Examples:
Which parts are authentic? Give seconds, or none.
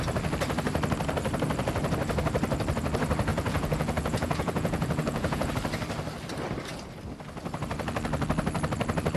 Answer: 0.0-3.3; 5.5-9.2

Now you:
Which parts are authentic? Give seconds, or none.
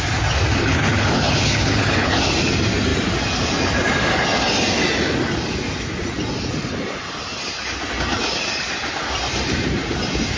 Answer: 0.0-0.6; 2.2-10.4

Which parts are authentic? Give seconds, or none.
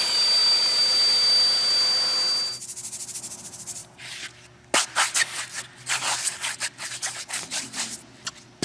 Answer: 0.0-8.6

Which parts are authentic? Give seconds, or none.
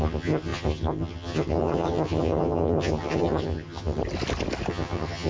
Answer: 4.0-4.7